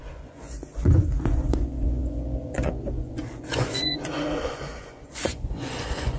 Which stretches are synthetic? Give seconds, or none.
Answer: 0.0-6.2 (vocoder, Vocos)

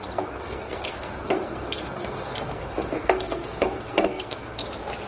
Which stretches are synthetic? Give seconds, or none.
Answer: 0.0-4.6 (codec, SNAC)